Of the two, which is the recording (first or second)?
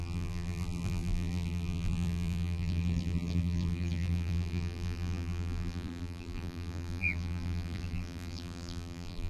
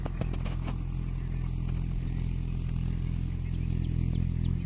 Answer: second